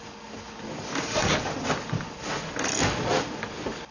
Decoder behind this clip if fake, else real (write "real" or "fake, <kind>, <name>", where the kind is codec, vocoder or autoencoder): real